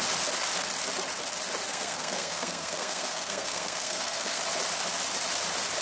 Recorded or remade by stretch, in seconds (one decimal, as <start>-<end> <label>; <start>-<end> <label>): 0.0-1.7 recorded; 1.7-4.4 remade; 4.4-5.8 recorded